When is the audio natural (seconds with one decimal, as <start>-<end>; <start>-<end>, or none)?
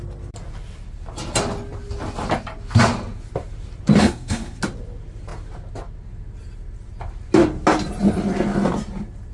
0.0-4.0; 4.6-9.3